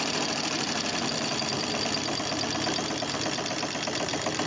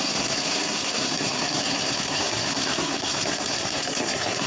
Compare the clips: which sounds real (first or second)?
first